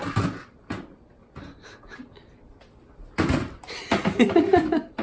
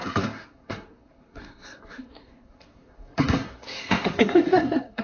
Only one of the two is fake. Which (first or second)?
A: second